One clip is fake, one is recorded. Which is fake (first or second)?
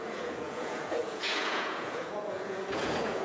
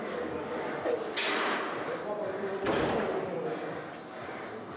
first